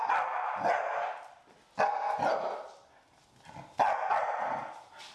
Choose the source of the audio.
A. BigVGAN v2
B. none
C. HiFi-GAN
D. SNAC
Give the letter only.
B